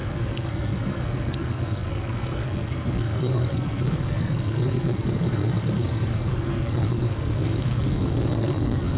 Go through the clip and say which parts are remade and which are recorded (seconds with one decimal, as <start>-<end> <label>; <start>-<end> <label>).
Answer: 0.0-9.0 remade